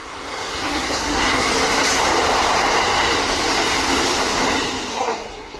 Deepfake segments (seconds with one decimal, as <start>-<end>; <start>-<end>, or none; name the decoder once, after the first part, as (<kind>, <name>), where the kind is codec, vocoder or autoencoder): 0.0-1.5 (codec, SNAC); 4.9-5.6